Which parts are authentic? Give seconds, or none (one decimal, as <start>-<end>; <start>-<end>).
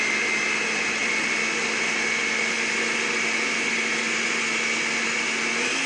0.0-5.9